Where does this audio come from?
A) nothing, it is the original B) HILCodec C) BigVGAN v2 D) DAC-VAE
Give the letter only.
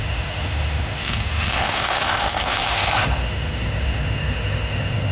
D